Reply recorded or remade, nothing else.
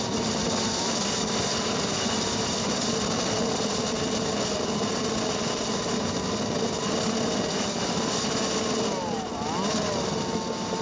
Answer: recorded